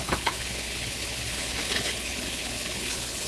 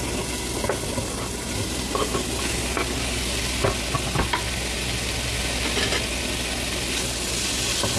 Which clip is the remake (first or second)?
first